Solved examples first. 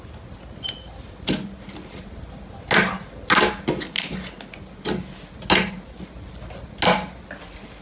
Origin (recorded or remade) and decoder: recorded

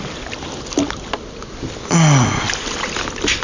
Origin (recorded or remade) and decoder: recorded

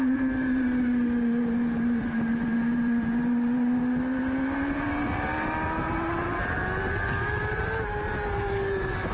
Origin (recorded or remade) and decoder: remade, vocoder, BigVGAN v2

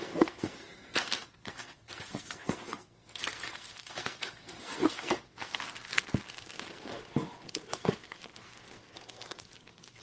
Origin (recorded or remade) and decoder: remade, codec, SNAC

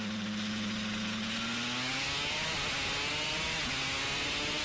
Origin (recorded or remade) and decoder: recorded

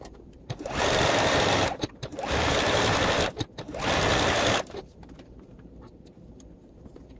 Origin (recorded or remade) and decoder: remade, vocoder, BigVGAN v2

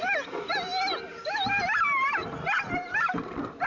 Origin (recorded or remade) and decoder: recorded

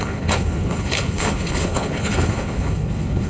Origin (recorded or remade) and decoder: remade, codec, HILCodec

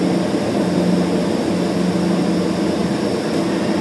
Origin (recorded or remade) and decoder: recorded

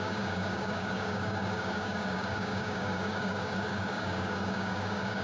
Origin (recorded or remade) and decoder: remade, codec, DAC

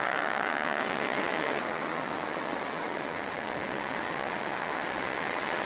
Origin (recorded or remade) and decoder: remade, vocoder, WaveNeXt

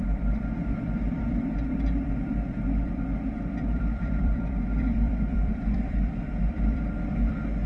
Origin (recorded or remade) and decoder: remade, vocoder, BigVGAN v2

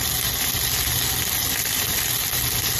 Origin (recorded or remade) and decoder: recorded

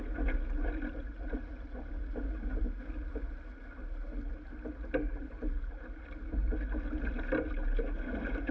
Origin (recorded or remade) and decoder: recorded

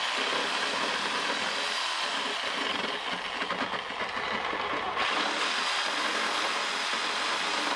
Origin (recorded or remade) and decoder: recorded